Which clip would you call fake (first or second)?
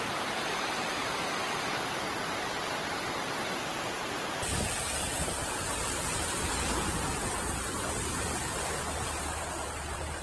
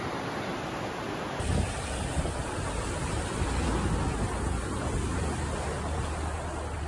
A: first